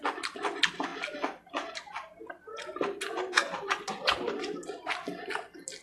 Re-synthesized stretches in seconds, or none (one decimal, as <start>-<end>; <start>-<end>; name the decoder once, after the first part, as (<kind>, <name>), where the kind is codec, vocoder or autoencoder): none

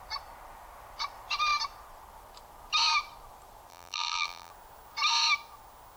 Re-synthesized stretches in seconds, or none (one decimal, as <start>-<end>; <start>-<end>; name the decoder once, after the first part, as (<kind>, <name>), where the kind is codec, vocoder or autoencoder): 3.7-4.5 (vocoder, BigVGAN v2)